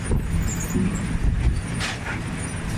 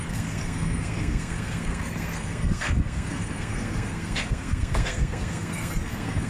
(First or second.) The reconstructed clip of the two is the second